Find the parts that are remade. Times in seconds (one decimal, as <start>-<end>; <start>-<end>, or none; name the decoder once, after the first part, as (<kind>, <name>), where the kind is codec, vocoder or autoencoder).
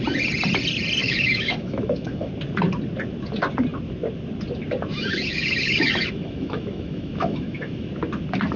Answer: 1.0-2.3 (autoencoder, DAC-VAE); 4.9-7.9